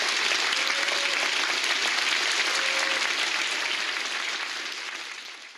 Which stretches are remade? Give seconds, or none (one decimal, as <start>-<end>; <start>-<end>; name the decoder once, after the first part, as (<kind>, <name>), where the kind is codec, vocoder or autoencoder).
none